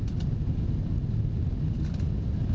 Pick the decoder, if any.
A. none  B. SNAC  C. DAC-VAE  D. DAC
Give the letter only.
A